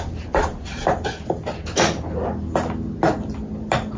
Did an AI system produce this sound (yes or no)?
no